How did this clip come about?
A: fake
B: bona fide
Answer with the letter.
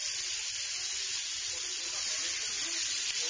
B